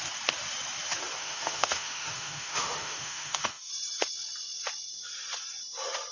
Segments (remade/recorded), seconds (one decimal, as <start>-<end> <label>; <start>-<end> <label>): 0.0-1.2 recorded; 1.2-3.7 remade; 3.7-6.1 recorded

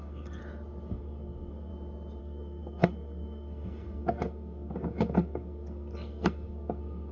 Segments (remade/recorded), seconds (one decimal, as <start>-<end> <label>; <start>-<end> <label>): 0.0-0.4 remade; 0.4-0.9 recorded; 0.9-1.7 remade; 1.7-2.2 recorded; 2.2-7.1 remade